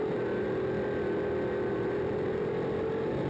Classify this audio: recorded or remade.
recorded